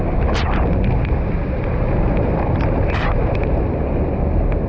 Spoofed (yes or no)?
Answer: no